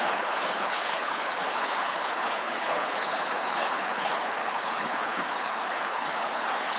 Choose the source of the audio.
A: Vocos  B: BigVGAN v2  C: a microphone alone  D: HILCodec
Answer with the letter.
D